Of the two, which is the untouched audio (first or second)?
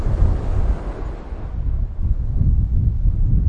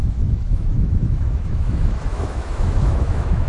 first